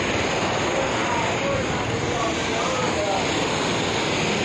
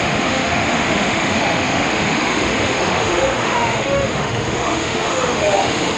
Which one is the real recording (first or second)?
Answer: first